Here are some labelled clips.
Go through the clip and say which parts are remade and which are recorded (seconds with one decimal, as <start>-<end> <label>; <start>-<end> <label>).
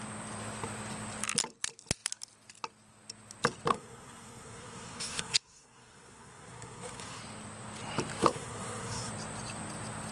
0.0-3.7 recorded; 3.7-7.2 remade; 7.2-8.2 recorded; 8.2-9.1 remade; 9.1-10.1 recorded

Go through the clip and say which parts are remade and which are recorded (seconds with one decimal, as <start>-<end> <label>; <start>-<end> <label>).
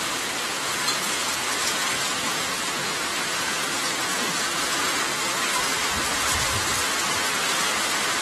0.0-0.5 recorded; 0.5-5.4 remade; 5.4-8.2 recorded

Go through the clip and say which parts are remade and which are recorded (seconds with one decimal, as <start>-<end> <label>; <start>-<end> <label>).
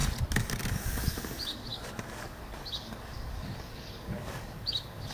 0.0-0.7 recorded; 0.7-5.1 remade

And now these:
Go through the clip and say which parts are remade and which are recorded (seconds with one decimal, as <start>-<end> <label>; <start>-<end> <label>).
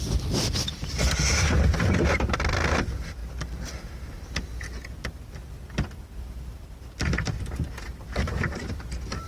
0.0-1.0 remade; 1.0-2.0 recorded; 2.0-5.4 remade; 5.4-6.0 recorded; 6.0-9.3 remade